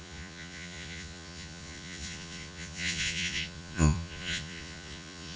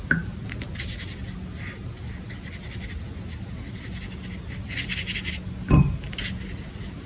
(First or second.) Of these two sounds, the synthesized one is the first